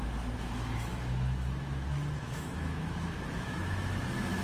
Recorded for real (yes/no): no